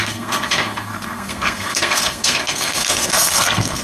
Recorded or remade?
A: remade